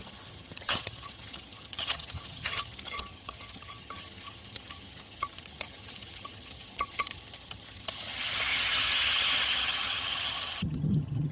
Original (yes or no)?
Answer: no